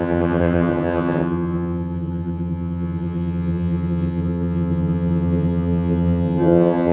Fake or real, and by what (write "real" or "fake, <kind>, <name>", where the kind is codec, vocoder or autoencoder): fake, vocoder, HiFi-GAN